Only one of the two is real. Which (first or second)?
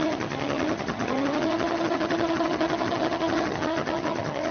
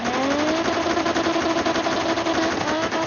second